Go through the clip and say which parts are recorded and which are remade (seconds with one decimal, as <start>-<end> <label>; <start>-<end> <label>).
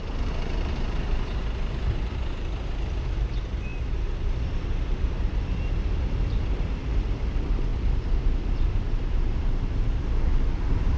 0.0-11.0 remade